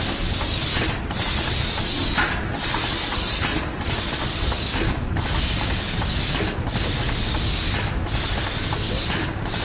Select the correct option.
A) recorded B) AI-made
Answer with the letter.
A